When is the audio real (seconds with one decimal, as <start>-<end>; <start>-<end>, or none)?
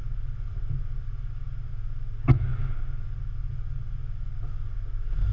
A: 0.0-5.3